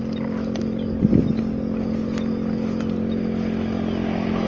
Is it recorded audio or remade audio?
recorded